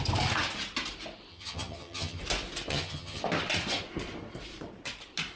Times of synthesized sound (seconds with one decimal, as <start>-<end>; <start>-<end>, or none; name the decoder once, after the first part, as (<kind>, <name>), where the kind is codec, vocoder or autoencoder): 1.3-2.2 (vocoder, HiFi-GAN); 2.7-3.2